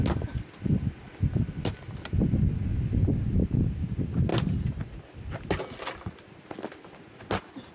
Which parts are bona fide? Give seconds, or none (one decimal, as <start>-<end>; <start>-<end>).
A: 0.0-7.7